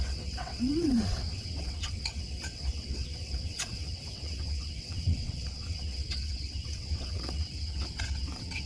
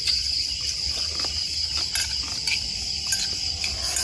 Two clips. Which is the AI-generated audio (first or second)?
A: first